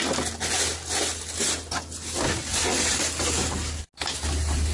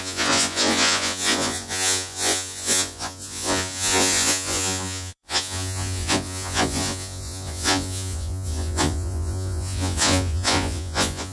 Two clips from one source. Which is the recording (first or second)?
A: first